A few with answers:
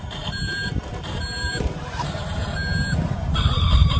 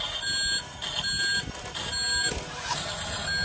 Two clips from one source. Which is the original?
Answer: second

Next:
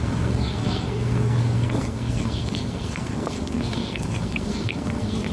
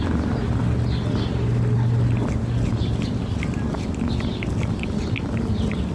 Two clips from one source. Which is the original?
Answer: second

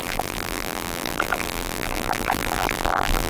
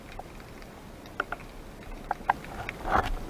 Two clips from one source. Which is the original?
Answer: second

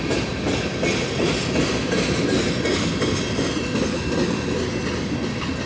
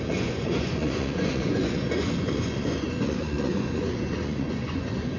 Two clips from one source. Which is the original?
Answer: first